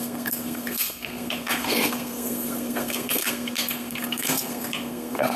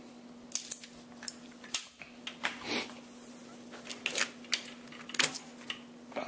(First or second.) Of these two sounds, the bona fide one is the second